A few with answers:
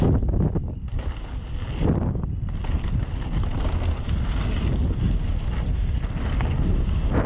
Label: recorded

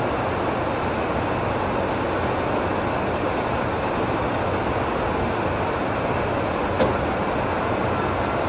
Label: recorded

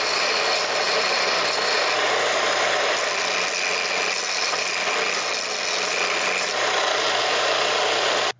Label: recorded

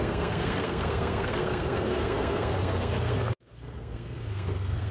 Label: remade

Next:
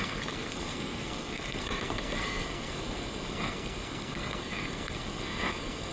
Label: remade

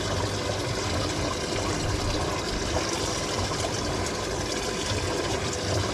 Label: recorded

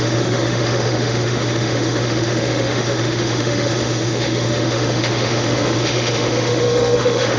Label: remade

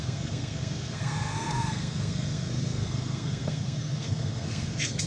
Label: remade